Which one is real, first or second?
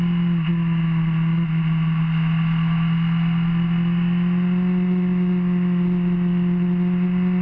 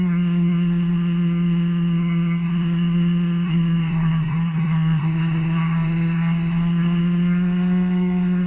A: first